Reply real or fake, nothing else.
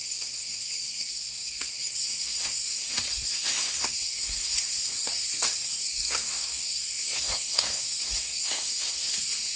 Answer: fake